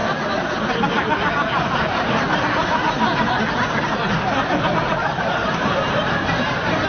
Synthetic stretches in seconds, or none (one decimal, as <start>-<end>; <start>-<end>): none